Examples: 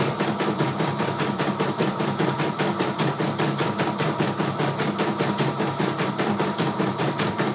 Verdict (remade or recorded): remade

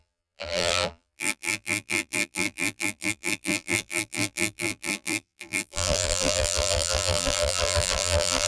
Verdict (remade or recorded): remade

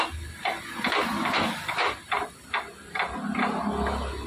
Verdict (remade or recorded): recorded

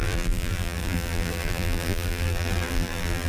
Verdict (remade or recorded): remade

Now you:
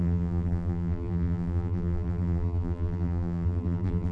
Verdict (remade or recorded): remade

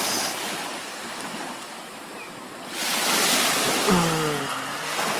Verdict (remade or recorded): recorded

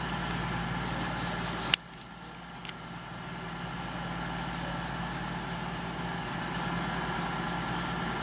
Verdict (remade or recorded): recorded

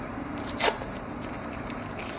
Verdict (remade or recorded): remade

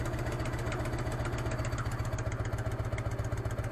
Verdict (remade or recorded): recorded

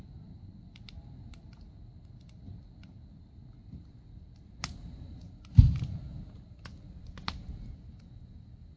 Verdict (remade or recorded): recorded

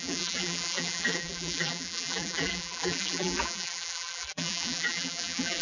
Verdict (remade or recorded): remade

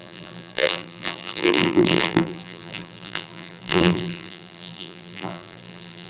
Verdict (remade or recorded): remade